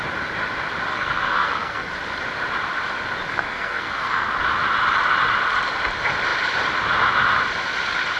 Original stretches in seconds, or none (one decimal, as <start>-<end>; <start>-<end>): 0.0-0.9; 1.9-3.3; 4.3-8.2